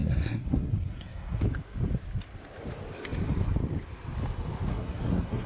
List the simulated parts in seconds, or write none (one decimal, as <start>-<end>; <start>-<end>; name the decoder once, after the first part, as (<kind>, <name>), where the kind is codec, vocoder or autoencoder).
0.0-1.4 (codec, SNAC); 4.7-5.5